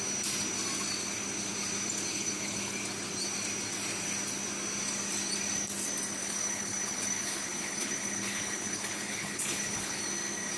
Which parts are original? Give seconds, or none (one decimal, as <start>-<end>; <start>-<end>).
0.0-2.1; 2.8-6.2; 10.0-10.6